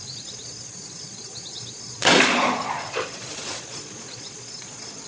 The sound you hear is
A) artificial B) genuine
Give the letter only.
A